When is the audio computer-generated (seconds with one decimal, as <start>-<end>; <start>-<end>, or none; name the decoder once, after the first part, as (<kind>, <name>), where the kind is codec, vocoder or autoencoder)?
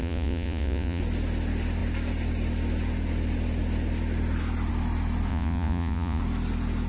0.0-1.0 (vocoder, Vocos); 5.3-6.2